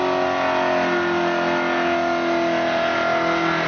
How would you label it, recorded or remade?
recorded